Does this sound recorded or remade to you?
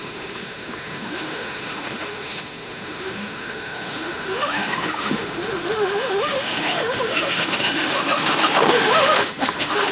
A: remade